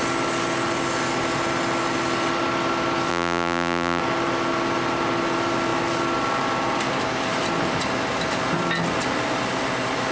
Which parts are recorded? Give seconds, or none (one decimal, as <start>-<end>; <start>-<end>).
0.0-3.1; 4.0-10.1